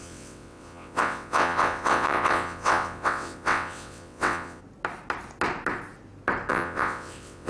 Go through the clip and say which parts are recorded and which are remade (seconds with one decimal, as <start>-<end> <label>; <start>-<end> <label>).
0.0-4.6 remade; 4.6-6.5 recorded; 6.5-7.5 remade